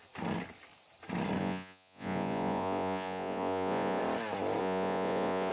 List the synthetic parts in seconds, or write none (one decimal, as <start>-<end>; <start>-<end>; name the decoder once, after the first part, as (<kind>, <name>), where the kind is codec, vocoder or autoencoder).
1.4-4.0 (vocoder, Vocos); 4.6-5.5